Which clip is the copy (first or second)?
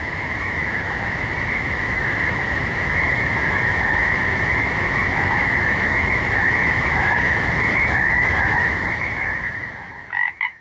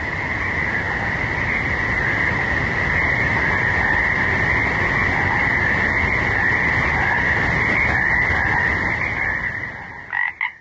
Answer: first